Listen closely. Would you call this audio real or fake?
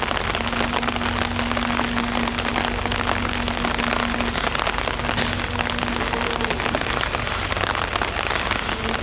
real